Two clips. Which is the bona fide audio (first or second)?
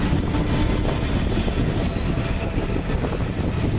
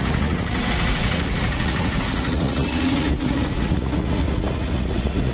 first